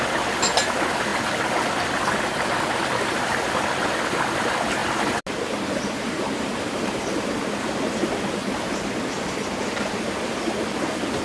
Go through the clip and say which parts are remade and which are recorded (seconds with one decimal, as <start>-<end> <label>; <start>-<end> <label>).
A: 0.0-11.2 recorded